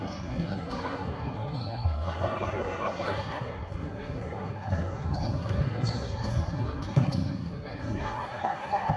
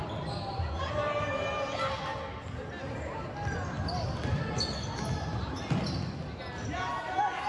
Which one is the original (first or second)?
second